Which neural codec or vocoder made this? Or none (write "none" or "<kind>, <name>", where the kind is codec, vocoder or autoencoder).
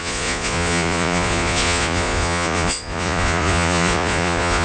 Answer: vocoder, Vocos